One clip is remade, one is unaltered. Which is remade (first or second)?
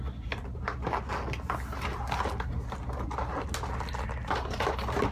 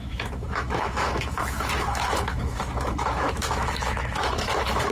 second